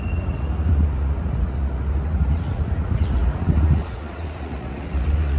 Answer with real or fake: fake